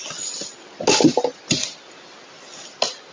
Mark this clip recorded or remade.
recorded